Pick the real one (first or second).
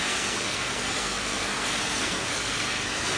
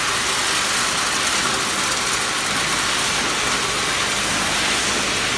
second